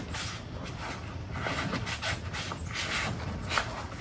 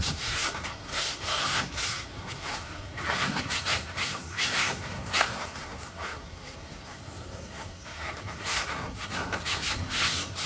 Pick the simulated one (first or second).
second